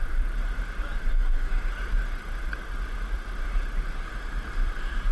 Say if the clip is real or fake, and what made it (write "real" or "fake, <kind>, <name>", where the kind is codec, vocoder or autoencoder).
real